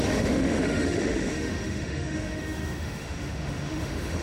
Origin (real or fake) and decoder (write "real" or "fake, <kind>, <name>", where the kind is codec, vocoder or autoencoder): fake, autoencoder, DAC-VAE